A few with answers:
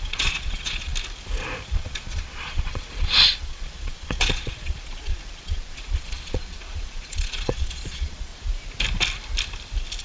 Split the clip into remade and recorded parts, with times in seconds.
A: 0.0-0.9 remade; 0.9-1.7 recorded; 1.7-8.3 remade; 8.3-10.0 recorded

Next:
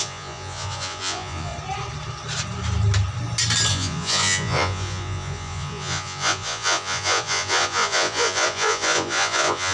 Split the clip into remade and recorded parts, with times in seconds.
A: 0.0-1.5 remade; 1.5-3.7 recorded; 3.7-9.7 remade